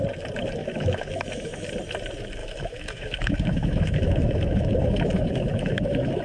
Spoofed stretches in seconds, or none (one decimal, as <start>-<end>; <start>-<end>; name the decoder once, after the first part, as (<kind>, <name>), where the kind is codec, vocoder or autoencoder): 0.6-1.7 (autoencoder, DAC-VAE); 2.4-6.2